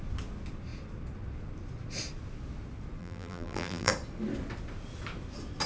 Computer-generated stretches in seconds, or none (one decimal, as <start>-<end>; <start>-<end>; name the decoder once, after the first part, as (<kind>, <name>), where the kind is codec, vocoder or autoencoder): 3.0-3.9 (vocoder, BigVGAN v2)